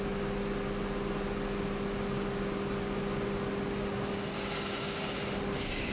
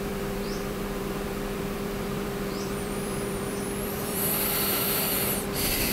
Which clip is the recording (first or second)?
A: first